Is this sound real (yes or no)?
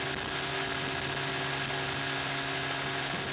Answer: yes